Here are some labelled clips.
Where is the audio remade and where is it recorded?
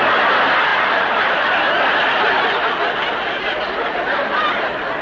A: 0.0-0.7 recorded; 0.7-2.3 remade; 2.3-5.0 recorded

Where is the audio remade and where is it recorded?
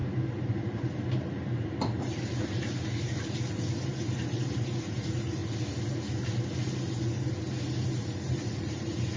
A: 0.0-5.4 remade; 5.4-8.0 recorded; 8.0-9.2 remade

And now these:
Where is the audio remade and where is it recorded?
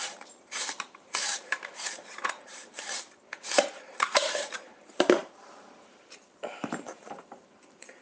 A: 0.0-8.0 remade